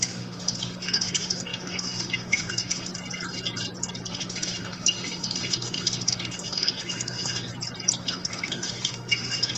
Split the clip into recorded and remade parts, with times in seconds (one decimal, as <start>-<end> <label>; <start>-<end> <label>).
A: 0.0-2.9 remade; 2.9-4.1 recorded; 4.1-7.5 remade; 7.5-8.0 recorded; 8.0-9.6 remade